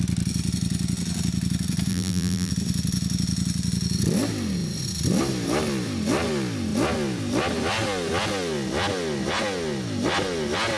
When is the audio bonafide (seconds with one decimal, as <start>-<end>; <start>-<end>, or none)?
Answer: 0.0-1.9; 2.5-10.8